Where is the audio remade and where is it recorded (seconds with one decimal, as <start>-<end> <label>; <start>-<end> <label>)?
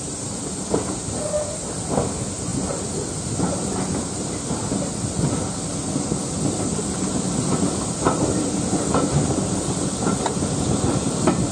0.0-11.5 recorded